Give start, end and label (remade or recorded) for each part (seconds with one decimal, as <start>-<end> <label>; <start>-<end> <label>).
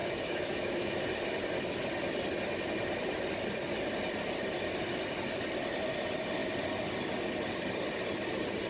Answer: 0.0-1.0 remade; 1.0-8.7 recorded